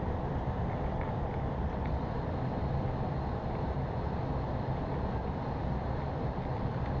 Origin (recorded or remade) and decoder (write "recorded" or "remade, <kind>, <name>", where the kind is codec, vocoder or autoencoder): remade, vocoder, BigVGAN v2